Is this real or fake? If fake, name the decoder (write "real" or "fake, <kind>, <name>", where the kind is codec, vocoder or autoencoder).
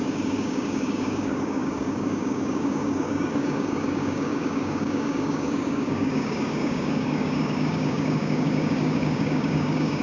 fake, codec, DAC